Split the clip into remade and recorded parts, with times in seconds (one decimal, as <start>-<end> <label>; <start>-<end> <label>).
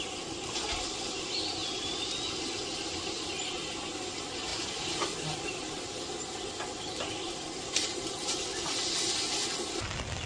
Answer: 0.0-10.3 recorded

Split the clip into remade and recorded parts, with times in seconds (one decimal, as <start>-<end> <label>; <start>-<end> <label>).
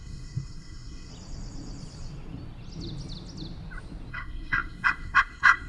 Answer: 0.0-1.1 remade; 1.1-4.1 recorded; 4.1-5.7 remade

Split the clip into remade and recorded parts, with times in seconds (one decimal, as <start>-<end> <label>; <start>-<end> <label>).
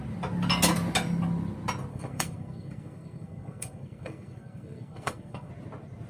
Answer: 0.0-1.9 recorded; 1.9-5.5 remade; 5.5-6.1 recorded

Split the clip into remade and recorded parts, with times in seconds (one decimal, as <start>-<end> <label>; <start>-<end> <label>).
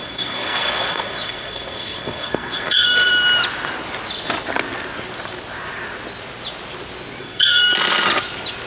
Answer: 0.0-3.1 remade; 3.1-7.2 recorded; 7.2-7.7 remade; 7.7-8.7 recorded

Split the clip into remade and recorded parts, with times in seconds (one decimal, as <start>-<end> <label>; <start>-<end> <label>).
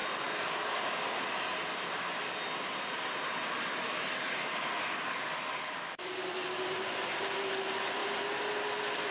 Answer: 0.0-9.1 recorded